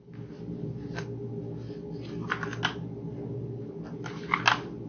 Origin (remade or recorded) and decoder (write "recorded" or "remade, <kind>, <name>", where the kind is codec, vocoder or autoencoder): recorded